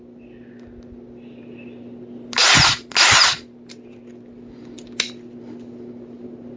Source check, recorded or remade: recorded